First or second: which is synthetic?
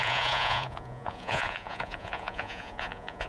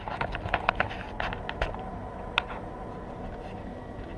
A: first